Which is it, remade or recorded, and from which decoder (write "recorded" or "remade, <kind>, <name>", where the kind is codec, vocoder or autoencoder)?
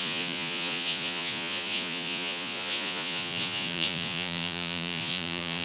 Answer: remade, vocoder, Vocos